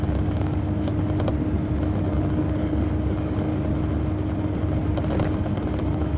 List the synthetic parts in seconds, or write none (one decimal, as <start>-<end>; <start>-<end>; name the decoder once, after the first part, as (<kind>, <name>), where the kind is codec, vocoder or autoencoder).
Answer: 0.0-0.9 (codec, DAC); 2.0-3.5; 5.2-6.2